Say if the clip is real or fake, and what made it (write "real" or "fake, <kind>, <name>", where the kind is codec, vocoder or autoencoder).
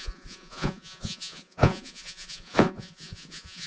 fake, vocoder, Vocos